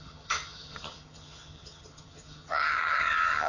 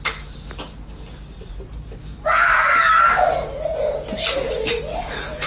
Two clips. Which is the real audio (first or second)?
second